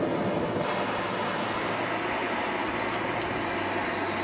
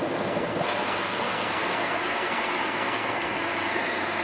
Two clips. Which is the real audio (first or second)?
first